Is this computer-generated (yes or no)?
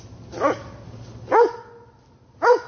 no